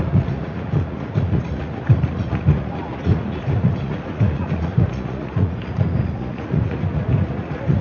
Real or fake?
fake